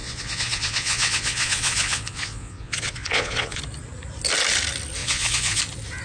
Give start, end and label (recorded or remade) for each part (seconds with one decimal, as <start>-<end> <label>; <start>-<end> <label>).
0.0-3.6 remade; 3.6-5.0 recorded; 5.0-5.6 remade; 5.6-6.0 recorded